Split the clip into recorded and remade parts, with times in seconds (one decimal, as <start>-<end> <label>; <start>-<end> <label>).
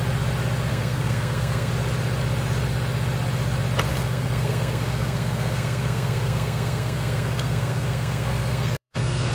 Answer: 0.0-0.7 recorded; 0.7-1.7 remade; 1.7-3.9 recorded; 3.9-9.3 remade